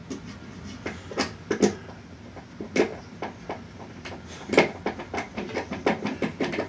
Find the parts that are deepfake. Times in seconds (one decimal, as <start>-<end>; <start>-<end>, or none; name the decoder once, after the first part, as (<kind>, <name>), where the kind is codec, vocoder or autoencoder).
none